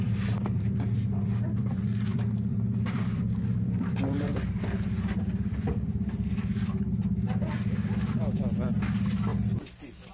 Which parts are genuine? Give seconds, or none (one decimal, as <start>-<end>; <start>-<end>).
4.3-5.2